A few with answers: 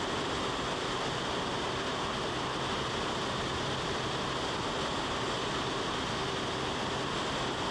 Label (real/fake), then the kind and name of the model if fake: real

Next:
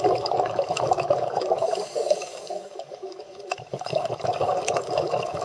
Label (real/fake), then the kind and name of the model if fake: fake, codec, DAC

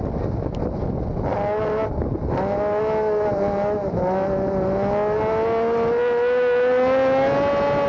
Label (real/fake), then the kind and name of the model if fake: real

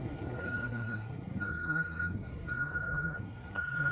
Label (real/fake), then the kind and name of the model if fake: fake, codec, SNAC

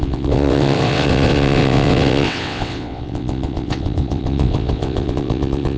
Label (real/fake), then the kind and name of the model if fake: fake, vocoder, WaveNeXt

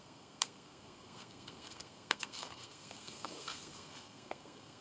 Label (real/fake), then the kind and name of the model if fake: fake, codec, SNAC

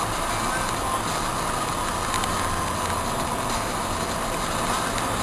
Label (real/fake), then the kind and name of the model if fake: real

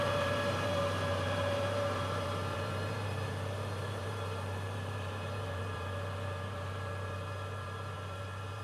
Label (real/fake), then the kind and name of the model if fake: fake, vocoder, BigVGAN v2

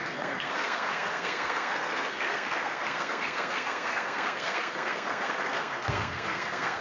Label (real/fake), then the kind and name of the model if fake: fake, codec, SNAC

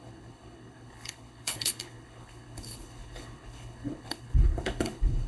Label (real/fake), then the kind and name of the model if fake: fake, codec, HILCodec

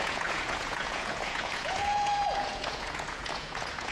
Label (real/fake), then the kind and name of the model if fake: fake, vocoder, Vocos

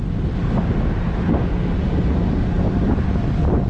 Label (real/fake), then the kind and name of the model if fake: real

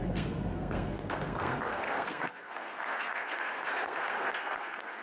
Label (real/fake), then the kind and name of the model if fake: fake, codec, SNAC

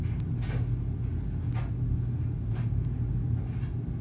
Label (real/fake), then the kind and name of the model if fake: real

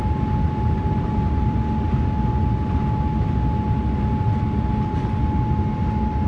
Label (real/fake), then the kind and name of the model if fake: real